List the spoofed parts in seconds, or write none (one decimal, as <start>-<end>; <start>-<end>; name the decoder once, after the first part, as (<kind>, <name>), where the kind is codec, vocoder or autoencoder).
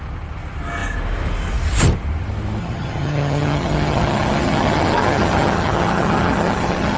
2.6-7.0 (vocoder, HiFi-GAN)